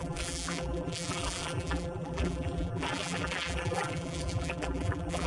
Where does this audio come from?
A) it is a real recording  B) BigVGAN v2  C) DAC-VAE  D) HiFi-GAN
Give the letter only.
B